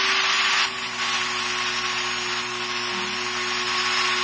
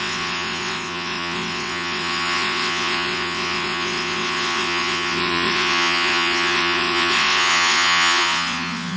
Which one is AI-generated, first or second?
second